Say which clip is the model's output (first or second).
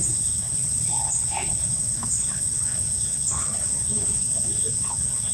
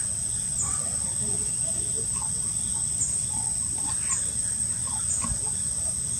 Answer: first